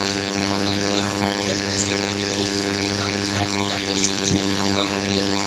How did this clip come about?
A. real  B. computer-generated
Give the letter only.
B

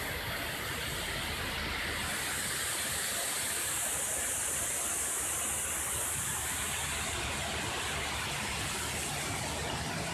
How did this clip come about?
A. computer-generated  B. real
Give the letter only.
B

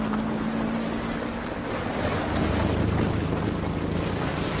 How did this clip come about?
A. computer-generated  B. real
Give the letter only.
B